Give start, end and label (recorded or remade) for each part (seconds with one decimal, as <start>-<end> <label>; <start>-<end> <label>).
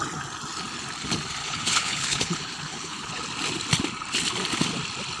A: 0.0-1.4 recorded; 1.4-3.2 remade; 3.2-5.2 recorded